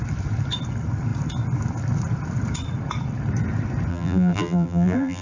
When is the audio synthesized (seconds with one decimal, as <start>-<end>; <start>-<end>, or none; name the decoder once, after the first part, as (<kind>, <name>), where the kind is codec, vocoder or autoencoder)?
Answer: 3.9-5.2 (vocoder, BigVGAN v2)